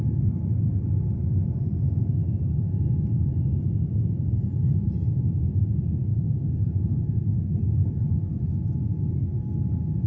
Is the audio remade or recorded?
recorded